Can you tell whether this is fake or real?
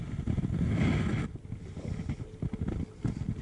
real